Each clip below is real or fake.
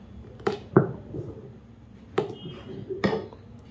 real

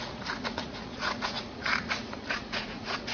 fake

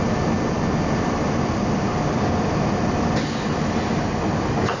real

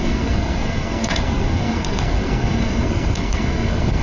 fake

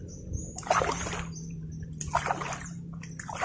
real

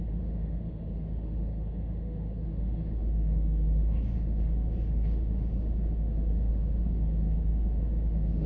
fake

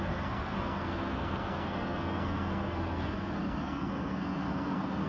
fake